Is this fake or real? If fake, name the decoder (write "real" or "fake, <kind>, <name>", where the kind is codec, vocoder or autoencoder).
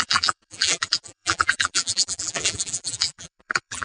fake, vocoder, BigVGAN v2